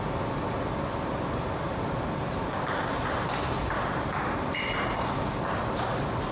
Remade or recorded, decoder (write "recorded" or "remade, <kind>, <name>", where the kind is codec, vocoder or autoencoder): recorded